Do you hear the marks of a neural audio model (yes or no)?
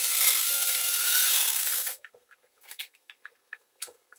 yes